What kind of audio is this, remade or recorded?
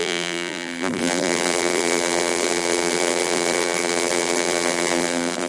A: remade